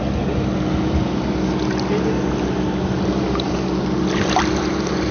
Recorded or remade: recorded